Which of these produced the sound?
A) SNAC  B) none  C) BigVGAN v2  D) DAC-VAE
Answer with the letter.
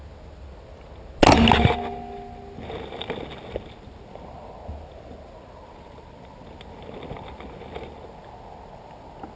B